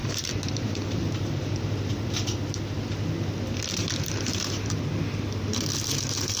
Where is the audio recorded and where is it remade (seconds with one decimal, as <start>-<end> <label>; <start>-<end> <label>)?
0.0-1.9 remade; 1.9-6.4 recorded